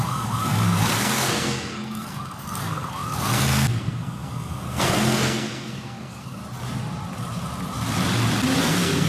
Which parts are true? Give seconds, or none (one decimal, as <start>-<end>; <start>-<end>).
6.4-8.6